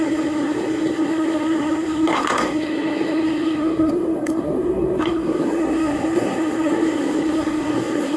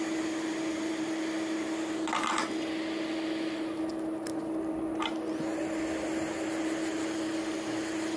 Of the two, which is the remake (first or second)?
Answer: first